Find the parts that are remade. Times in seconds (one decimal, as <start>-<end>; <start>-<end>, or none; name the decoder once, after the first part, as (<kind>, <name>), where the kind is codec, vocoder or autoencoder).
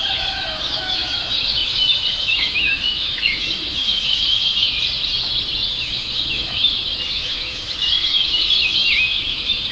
0.0-4.7 (autoencoder, DAC-VAE); 5.8-9.7